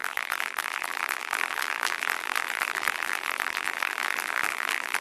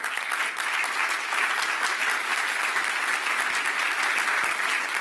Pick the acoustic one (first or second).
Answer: second